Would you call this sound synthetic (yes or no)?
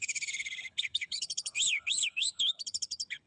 yes